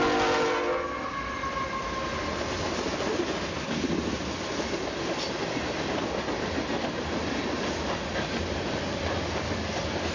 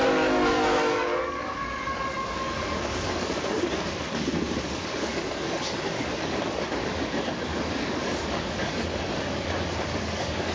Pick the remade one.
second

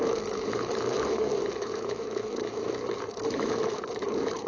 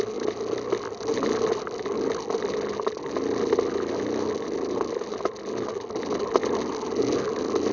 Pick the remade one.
first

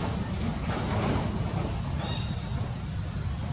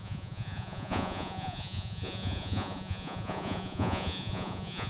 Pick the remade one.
second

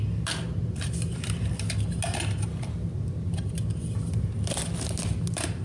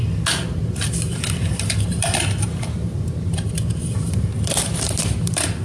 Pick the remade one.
second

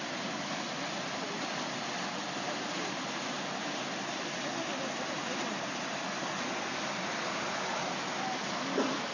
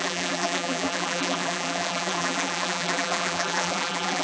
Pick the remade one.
second